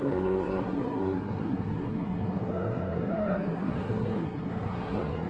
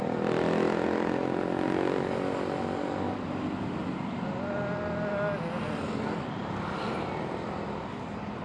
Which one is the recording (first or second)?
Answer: second